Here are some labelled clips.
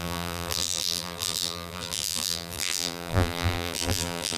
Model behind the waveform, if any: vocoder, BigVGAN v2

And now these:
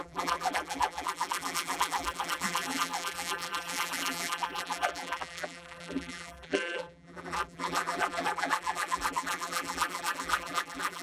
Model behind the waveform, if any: vocoder, BigVGAN v2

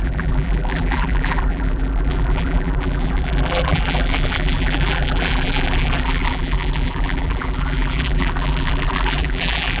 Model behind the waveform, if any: vocoder, BigVGAN v2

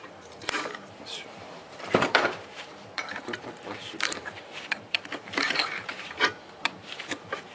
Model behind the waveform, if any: vocoder, BigVGAN v2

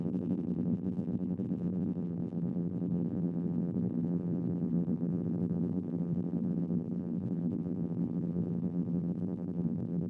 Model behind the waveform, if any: vocoder, BigVGAN v2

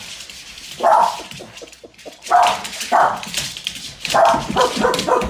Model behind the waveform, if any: vocoder, BigVGAN v2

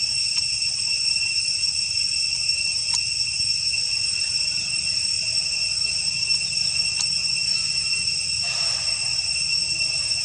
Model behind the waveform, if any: none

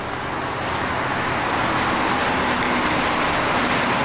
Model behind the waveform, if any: none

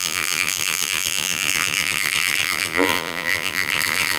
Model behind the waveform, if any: vocoder, BigVGAN v2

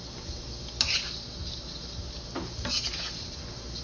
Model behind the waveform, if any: none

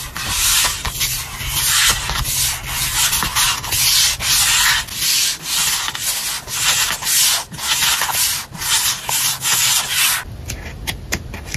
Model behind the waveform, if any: none